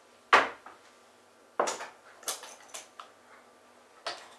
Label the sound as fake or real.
real